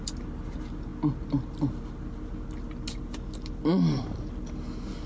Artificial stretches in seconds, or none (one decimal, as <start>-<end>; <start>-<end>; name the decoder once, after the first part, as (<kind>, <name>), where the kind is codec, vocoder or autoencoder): none